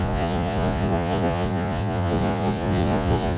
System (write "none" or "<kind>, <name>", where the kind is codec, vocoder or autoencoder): vocoder, Vocos